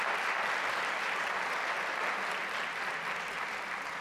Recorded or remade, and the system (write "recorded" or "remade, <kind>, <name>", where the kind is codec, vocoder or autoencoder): remade, vocoder, BigVGAN v2